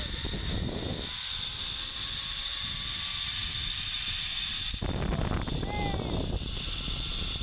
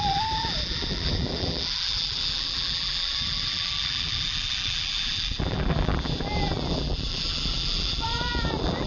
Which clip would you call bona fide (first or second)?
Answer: first